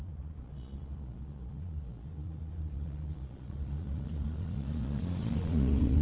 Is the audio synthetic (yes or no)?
yes